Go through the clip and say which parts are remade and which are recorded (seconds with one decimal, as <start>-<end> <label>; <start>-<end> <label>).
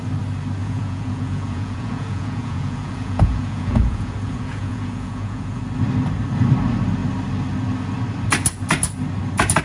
0.0-0.6 recorded; 0.6-5.6 remade; 5.6-9.6 recorded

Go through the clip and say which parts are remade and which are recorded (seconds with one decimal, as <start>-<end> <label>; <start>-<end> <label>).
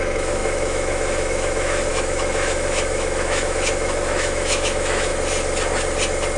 0.0-5.1 remade; 5.1-6.4 recorded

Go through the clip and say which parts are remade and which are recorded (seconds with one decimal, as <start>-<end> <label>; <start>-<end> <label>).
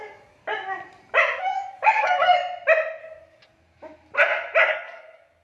0.0-0.4 remade; 0.4-1.4 recorded; 1.4-2.4 remade; 2.4-3.0 recorded; 3.0-3.5 remade; 3.5-4.7 recorded; 4.7-5.4 remade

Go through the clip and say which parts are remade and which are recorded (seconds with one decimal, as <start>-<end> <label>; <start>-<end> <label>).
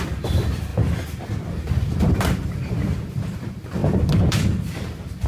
0.0-0.7 remade; 0.7-1.6 recorded; 1.6-3.8 remade; 3.8-4.3 recorded; 4.3-5.3 remade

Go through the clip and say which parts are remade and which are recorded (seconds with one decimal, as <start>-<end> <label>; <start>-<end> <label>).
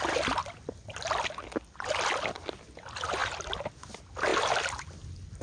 0.0-5.4 recorded